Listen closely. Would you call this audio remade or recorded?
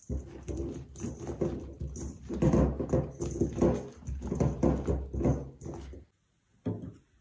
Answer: recorded